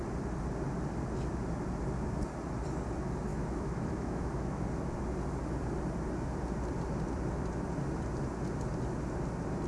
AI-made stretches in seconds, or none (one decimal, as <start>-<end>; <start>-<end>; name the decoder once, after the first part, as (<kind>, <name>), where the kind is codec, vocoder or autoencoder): 3.3-4.6 (autoencoder, DAC-VAE)